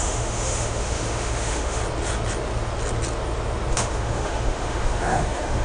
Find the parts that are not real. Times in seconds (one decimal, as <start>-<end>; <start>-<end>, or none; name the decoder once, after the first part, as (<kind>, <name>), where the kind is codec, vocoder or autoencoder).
0.0-1.8 (autoencoder, DAC-VAE); 3.7-5.6